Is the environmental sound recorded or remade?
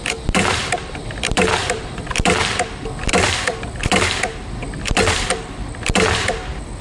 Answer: remade